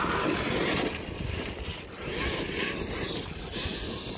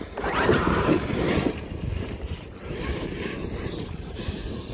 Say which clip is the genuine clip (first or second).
first